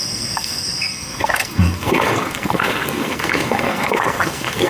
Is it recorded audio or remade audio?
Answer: remade